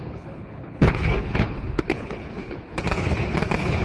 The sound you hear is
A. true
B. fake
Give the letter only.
B